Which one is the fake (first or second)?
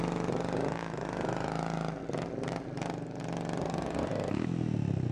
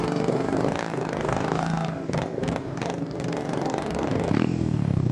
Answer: second